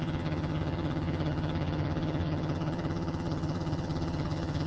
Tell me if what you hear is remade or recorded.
remade